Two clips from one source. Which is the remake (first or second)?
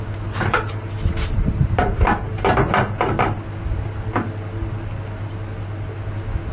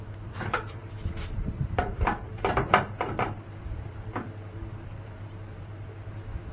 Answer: second